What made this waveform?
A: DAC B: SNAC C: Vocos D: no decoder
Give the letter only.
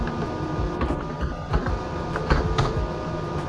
D